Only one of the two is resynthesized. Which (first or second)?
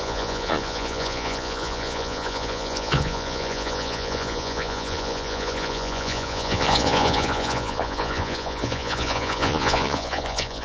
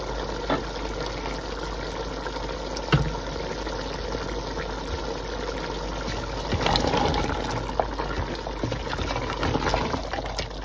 first